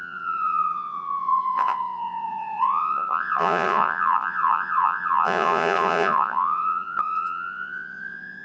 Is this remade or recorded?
remade